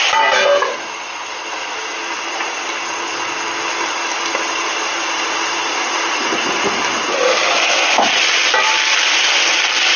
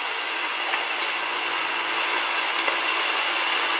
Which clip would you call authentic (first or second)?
first